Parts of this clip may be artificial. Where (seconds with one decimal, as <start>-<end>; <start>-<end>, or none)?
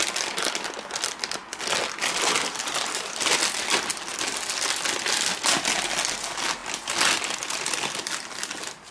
none